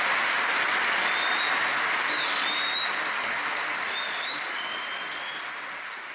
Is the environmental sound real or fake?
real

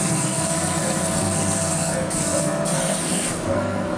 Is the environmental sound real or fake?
fake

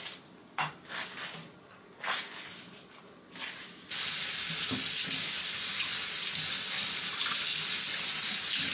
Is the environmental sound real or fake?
real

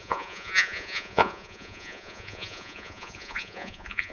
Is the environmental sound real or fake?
fake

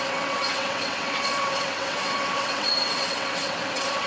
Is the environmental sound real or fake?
fake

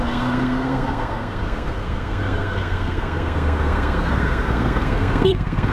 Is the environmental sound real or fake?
fake